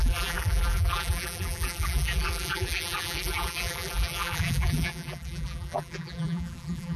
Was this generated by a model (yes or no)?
yes